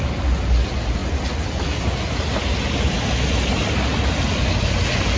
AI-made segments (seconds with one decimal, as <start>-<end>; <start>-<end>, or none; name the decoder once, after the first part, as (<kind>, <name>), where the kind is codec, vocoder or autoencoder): none